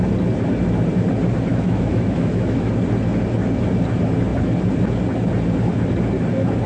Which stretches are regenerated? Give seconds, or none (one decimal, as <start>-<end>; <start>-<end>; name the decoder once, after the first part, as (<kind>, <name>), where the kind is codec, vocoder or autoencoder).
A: 1.5-2.7 (autoencoder, DAC-VAE)